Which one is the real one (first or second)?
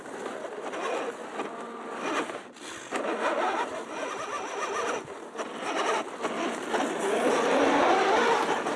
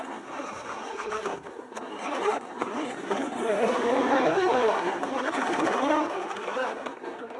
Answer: first